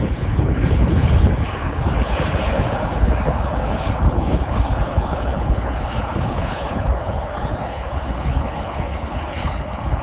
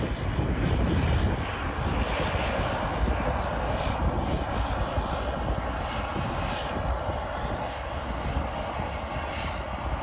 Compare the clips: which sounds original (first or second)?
second